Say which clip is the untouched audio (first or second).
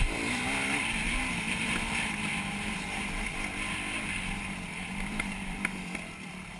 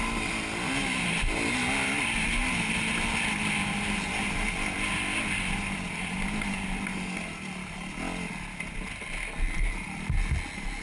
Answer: second